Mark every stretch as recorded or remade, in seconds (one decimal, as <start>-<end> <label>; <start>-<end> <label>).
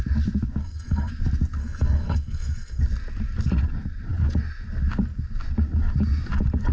0.0-0.6 recorded; 0.6-1.1 remade; 1.1-1.6 recorded; 1.6-2.8 remade; 2.8-6.7 recorded